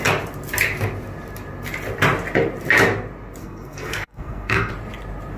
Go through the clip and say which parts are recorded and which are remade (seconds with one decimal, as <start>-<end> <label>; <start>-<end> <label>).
0.0-3.4 recorded; 3.4-4.7 remade; 4.7-5.4 recorded